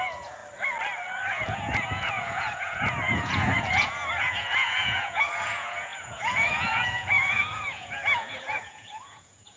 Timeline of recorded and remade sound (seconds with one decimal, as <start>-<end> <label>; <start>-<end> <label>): 0.0-0.4 remade; 0.4-1.3 recorded; 1.3-9.6 remade